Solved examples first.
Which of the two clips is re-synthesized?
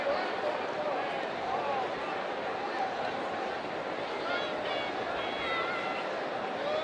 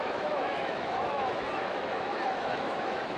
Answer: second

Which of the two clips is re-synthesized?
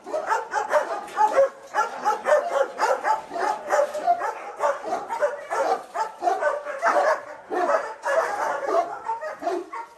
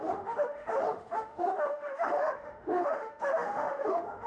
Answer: second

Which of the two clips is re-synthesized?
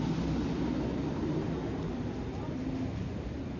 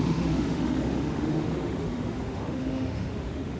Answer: second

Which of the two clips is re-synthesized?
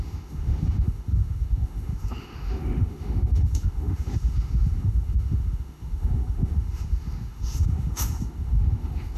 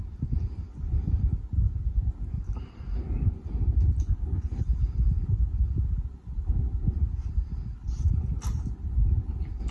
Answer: first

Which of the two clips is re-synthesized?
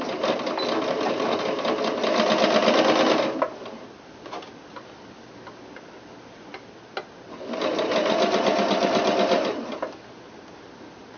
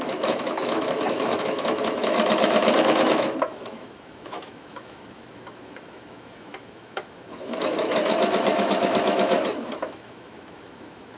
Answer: second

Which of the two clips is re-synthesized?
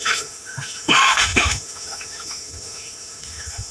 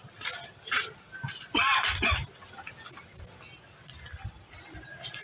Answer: first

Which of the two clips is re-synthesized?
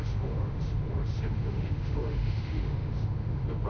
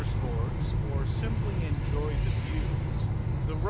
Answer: first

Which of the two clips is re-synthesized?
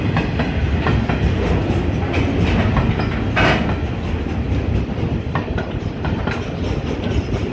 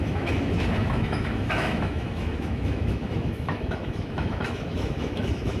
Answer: second